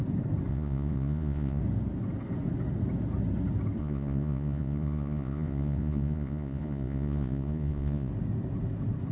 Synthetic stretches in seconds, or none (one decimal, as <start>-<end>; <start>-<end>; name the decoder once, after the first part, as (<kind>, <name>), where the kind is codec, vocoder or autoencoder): 0.5-1.6 (vocoder, Vocos); 3.8-8.1